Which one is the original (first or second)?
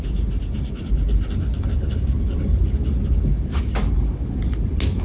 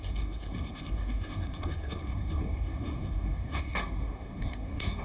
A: first